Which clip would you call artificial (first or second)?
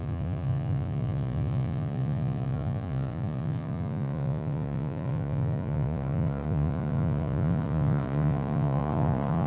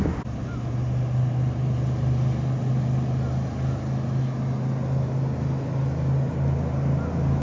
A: first